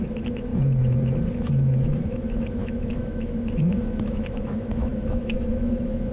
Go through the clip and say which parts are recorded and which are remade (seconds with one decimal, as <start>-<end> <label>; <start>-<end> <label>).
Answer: 0.0-0.5 remade; 0.5-1.3 recorded; 1.3-6.1 remade